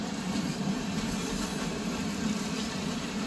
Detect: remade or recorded recorded